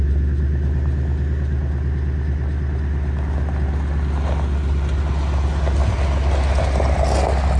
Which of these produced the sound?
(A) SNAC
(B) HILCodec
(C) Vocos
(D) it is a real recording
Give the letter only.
D